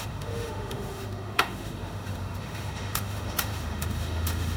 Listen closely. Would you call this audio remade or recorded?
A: remade